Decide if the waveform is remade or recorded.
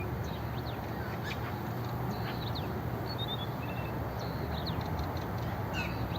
recorded